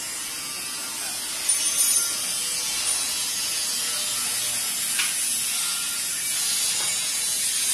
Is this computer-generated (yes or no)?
no